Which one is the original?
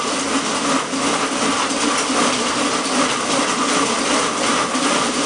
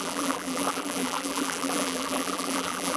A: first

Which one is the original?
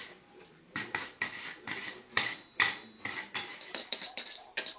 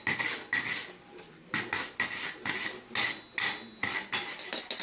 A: second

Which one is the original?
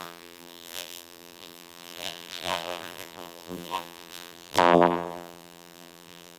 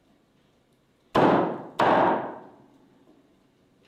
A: second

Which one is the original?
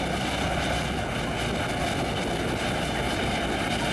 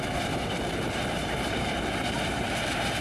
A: first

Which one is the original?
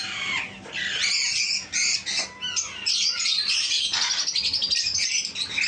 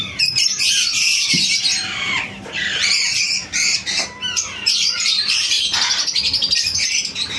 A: first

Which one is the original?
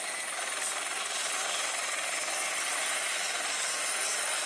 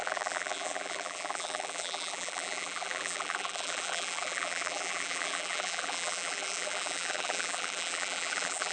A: first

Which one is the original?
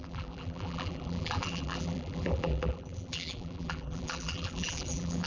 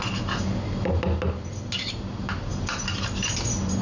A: second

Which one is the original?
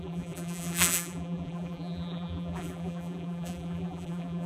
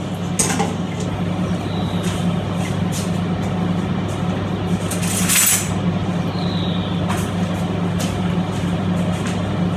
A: second